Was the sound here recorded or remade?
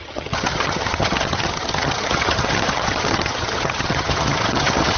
remade